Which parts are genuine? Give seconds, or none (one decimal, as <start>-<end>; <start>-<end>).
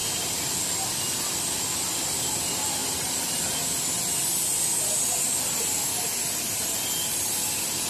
0.0-7.9